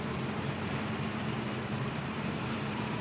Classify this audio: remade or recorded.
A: remade